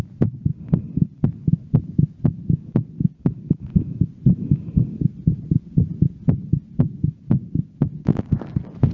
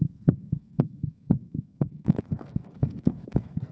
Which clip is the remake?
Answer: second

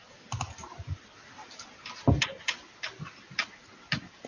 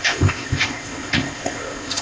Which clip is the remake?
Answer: second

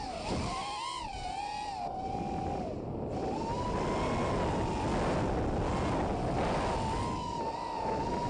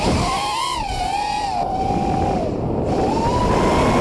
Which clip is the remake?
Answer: second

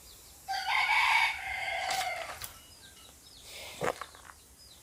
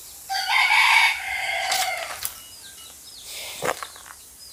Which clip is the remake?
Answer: first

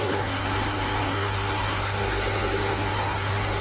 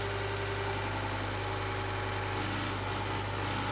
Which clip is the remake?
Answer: first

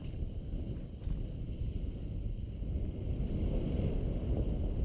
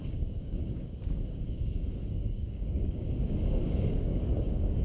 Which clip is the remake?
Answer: second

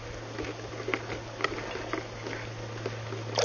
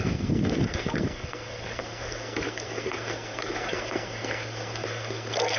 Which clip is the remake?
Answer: second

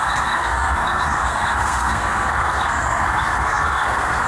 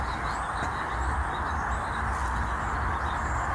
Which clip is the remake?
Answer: first